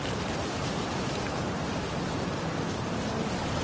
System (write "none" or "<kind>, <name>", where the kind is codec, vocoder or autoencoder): vocoder, BigVGAN v2